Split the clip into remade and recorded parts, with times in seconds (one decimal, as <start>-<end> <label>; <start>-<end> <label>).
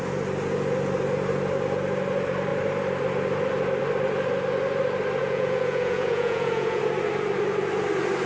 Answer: 0.0-5.2 recorded; 5.2-6.8 remade; 6.8-8.3 recorded